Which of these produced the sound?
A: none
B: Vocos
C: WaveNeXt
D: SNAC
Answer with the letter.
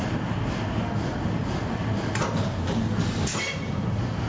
A